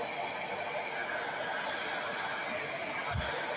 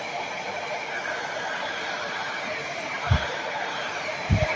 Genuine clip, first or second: first